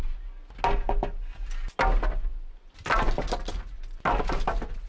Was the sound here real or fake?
real